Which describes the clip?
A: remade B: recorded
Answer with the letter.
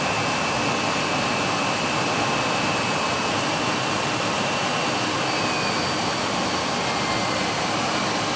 B